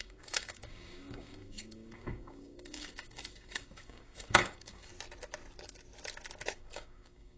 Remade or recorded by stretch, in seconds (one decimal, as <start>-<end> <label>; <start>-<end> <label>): 0.0-4.9 remade; 4.9-6.5 recorded; 6.5-7.4 remade